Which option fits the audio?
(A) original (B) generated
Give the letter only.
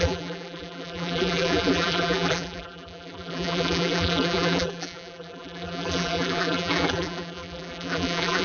B